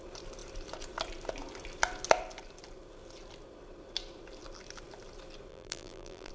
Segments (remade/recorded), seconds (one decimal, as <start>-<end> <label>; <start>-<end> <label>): 0.0-5.5 recorded; 5.5-6.3 remade